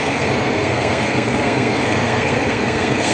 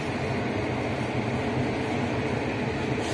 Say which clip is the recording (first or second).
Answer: second